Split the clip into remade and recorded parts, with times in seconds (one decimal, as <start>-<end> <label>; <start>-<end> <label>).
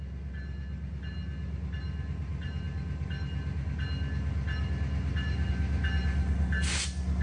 0.0-7.2 recorded